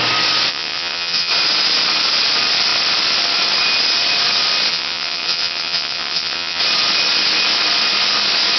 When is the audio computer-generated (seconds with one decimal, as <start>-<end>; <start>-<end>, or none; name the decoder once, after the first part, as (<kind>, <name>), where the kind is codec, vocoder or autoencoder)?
0.5-1.3 (vocoder, WaveNeXt); 4.7-6.6